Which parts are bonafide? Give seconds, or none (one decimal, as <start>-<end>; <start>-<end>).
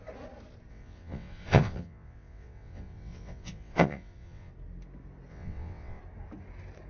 0.0-0.7; 4.5-5.3; 6.0-6.9